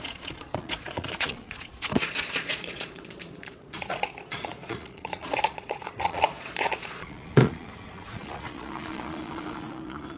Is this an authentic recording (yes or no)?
no